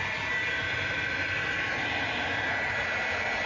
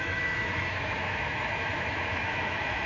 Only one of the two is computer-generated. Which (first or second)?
second